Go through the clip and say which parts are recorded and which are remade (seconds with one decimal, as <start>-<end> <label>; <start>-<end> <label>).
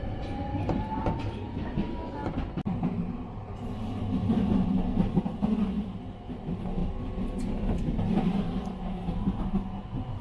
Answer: 0.0-10.2 recorded